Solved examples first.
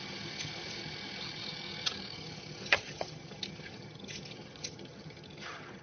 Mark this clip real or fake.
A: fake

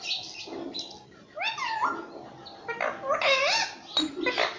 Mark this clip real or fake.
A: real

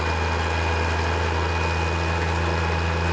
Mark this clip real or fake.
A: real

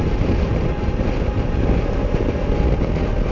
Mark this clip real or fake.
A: real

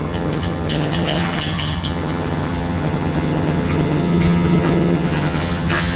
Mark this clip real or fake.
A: fake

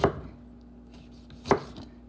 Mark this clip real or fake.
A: real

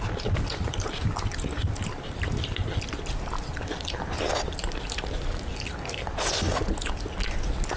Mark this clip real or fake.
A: real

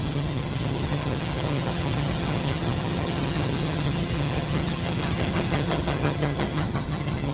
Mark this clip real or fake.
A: fake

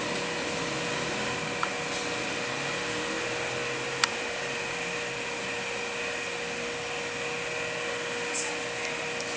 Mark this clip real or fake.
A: real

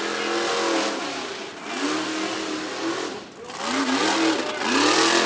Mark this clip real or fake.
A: real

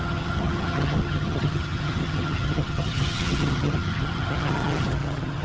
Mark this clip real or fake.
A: fake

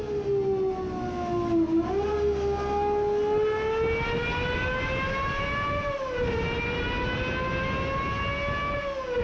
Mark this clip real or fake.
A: real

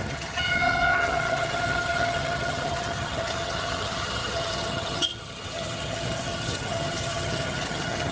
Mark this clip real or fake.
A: fake